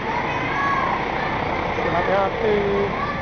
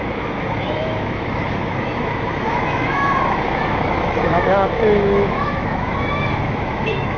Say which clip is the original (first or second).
first